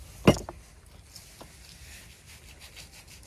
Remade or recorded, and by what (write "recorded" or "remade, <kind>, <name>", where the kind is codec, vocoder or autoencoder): recorded